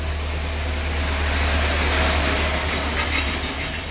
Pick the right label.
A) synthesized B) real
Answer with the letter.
B